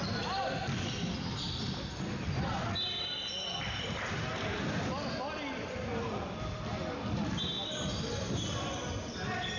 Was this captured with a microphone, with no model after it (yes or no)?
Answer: yes